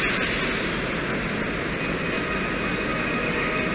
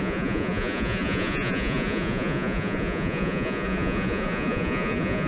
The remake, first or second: second